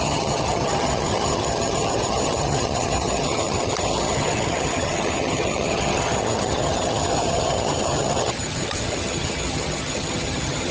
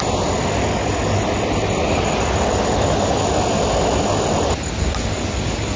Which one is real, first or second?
second